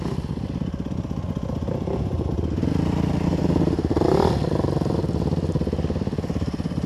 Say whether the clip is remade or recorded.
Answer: recorded